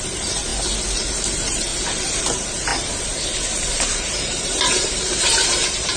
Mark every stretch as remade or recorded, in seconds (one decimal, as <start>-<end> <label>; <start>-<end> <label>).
0.0-0.5 remade; 0.5-1.1 recorded; 1.1-1.7 remade; 1.7-2.2 recorded; 2.2-2.7 remade; 2.7-3.8 recorded; 3.8-6.0 remade